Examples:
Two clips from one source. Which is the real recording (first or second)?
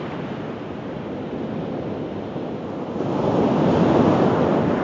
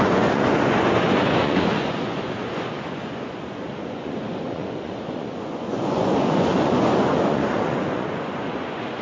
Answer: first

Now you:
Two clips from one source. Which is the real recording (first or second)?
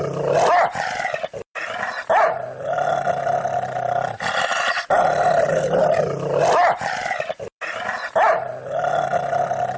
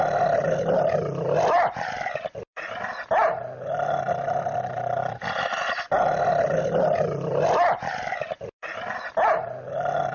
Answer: first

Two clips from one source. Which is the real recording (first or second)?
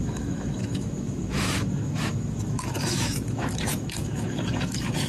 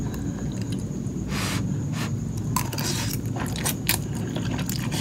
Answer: second